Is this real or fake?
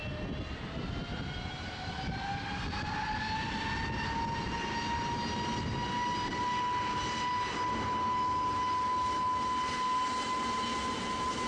real